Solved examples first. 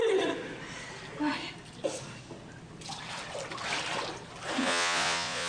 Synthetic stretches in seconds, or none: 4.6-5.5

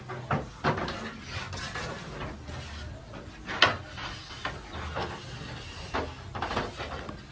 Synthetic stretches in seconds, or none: none

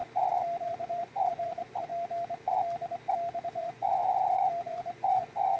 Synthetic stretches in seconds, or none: 0.6-1.9; 3.5-4.0; 4.6-5.6

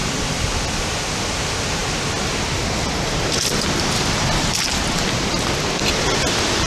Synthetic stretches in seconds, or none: none

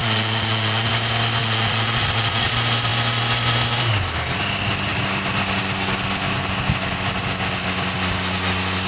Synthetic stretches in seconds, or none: 0.0-0.9; 1.4-2.5

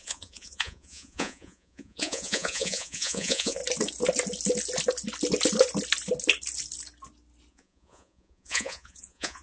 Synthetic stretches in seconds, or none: 0.0-3.6; 7.5-9.4

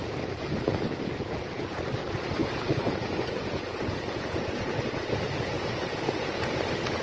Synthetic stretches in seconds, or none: 0.0-1.8; 2.4-6.6